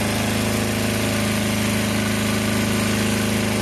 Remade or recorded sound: recorded